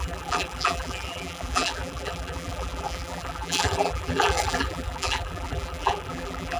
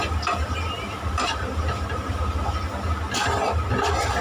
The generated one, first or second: first